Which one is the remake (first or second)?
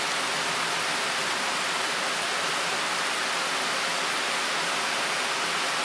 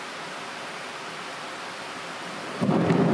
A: second